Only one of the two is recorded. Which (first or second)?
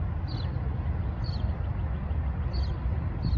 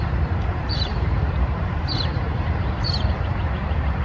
first